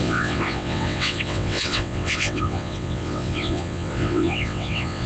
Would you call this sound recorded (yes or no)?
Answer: no